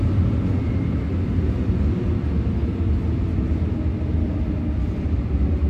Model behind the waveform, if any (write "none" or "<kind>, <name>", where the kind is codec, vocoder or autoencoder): none